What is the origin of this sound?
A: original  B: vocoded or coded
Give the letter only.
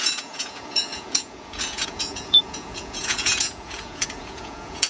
B